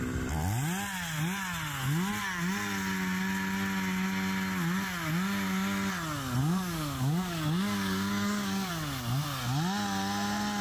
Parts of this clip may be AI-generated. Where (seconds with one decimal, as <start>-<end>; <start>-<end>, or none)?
6.4-8.7